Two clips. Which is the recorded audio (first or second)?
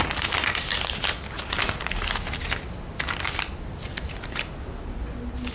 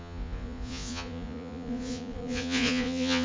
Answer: first